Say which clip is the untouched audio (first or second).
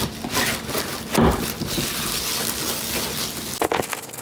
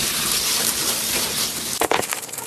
first